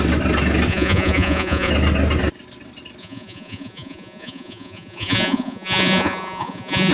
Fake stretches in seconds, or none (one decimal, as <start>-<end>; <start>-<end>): 0.7-1.7; 3.0-6.9